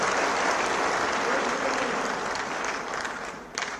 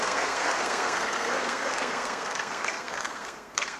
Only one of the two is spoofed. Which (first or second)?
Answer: second